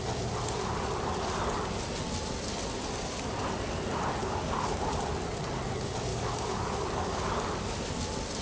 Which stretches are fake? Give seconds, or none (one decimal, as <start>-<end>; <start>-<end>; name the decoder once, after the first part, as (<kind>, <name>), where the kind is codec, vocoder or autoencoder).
4.2-4.8 (codec, DAC); 6.1-8.0